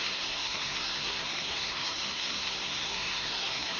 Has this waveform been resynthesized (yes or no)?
yes